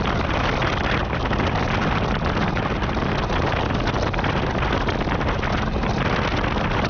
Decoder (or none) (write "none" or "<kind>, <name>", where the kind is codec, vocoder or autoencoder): none